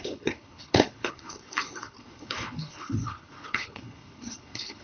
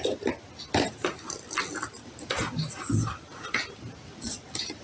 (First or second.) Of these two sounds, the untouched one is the second